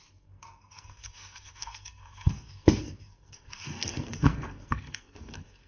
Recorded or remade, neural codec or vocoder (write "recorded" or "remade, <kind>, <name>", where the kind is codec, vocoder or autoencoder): remade, codec, SNAC